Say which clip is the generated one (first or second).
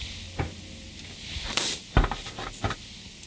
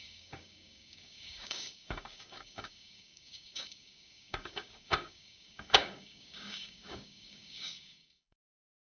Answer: second